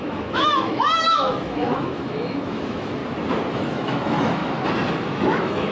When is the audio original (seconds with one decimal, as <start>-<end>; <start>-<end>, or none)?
3.0-3.5; 4.4-4.9